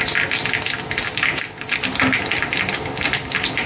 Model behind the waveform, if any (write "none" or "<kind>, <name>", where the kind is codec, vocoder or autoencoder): none